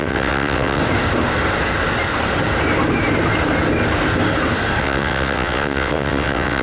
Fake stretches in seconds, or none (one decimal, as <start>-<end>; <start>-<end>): 0.0-0.8; 4.8-6.6